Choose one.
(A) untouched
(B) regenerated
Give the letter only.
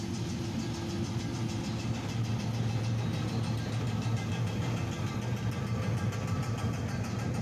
A